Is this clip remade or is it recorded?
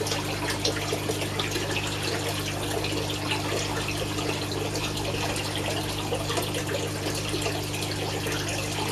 recorded